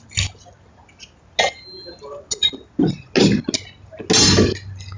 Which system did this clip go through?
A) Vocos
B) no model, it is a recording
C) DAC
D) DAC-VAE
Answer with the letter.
B